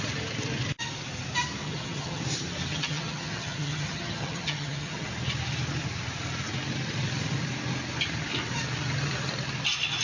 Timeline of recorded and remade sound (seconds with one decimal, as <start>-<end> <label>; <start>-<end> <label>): 0.0-1.6 recorded; 1.6-2.2 remade; 2.2-2.7 recorded; 2.7-5.1 remade; 5.1-10.0 recorded